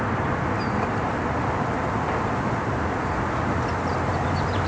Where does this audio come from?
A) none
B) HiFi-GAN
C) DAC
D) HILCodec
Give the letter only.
A